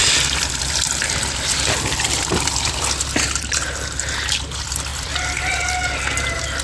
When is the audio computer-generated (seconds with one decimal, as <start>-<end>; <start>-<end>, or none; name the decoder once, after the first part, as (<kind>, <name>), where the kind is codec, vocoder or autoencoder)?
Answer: 0.0-2.8 (vocoder, BigVGAN v2); 4.9-5.4